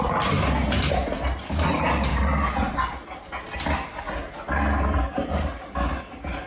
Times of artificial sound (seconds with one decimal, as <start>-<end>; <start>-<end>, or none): none